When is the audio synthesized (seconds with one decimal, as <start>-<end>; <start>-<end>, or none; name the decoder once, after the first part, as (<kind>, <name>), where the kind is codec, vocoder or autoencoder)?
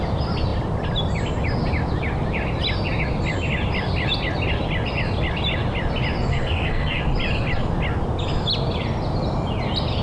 6.3-7.0 (codec, SNAC)